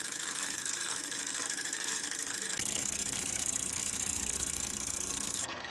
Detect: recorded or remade remade